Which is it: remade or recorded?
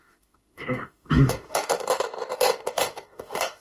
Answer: remade